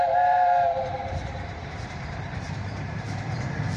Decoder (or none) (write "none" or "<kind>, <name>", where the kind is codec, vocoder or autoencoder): vocoder, BigVGAN v2